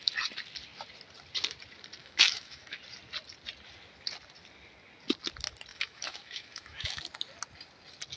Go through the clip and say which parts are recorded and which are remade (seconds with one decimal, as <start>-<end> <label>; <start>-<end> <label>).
0.0-2.0 recorded; 2.0-2.8 remade; 2.8-5.7 recorded; 5.7-7.0 remade; 7.0-8.2 recorded